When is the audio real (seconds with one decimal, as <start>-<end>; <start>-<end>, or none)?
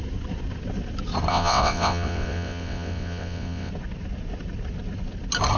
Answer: 0.0-1.3; 3.7-5.6